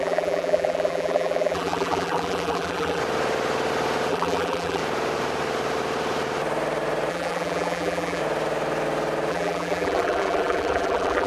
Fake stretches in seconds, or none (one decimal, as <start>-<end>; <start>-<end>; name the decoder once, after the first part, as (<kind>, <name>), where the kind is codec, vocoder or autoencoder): 0.0-3.0 (vocoder, BigVGAN v2); 4.1-4.8; 7.1-8.2; 9.3-11.3